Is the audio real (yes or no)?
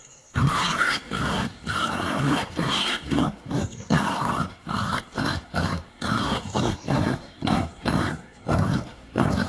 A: no